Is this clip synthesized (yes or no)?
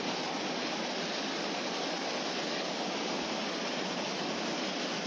no